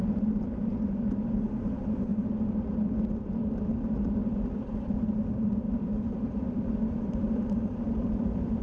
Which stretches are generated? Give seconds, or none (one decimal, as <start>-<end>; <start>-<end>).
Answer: 6.1-8.6

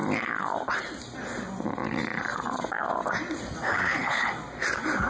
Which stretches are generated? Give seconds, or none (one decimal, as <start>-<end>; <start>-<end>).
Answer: 3.7-4.3

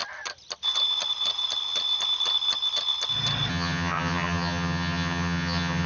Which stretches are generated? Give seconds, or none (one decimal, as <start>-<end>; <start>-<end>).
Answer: 3.5-5.9

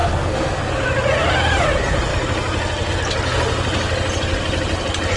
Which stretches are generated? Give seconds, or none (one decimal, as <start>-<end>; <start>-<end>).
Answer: 0.0-0.7

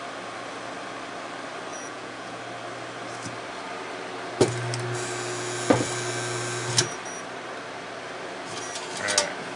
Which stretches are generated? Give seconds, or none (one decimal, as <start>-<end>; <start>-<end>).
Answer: 1.7-2.4